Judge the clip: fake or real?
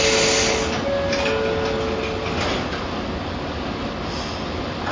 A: real